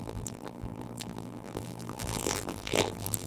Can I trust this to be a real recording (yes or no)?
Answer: no